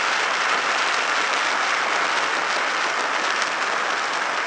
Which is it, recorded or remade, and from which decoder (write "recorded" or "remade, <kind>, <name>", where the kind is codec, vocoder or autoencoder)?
recorded